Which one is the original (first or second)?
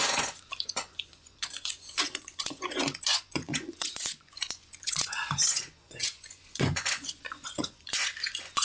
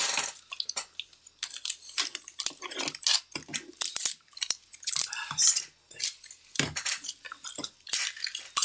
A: second